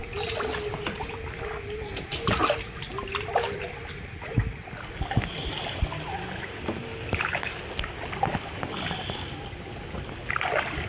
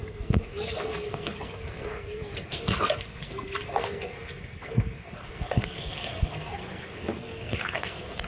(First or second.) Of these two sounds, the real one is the first